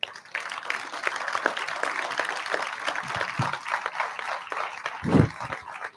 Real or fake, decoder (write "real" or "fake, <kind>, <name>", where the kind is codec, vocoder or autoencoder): real